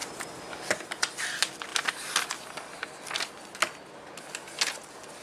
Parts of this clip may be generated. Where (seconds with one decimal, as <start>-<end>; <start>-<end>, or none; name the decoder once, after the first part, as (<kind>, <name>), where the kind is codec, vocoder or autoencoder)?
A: none